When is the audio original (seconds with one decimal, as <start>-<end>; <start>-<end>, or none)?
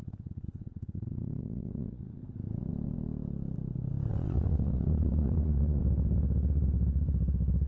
2.2-4.1; 5.8-7.7